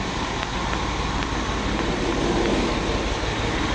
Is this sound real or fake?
real